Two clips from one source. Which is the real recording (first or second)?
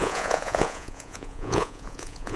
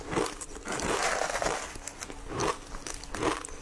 second